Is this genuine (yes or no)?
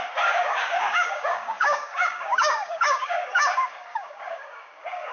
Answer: no